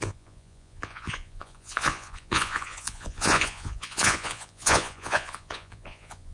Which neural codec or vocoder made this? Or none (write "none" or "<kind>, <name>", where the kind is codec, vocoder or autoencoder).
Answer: vocoder, Vocos